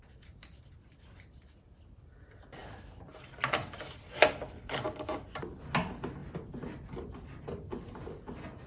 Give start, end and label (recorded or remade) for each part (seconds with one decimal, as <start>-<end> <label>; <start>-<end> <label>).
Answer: 0.0-8.7 recorded